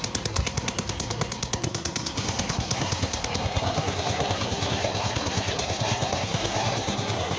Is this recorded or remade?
remade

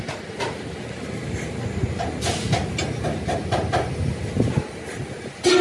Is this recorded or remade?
recorded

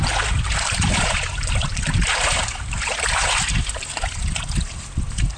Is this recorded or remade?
recorded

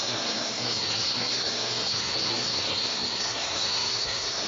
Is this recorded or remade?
remade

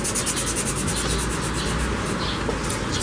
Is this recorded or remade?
recorded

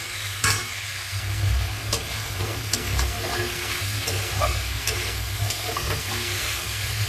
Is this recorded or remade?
remade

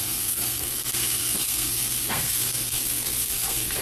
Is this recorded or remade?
remade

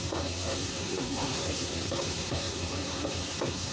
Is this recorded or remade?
remade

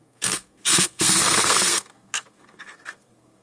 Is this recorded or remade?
remade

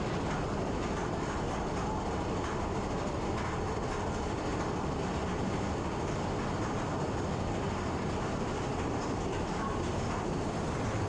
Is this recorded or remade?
recorded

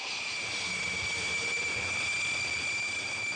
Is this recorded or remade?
recorded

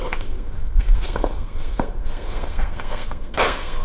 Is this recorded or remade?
remade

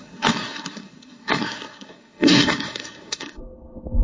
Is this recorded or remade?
remade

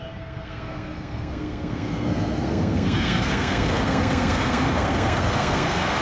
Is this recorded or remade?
remade